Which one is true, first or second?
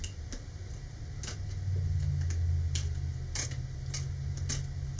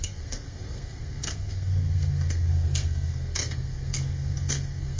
first